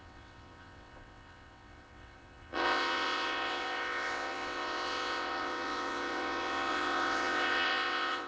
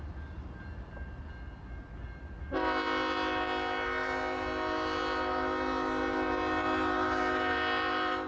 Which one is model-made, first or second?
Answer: first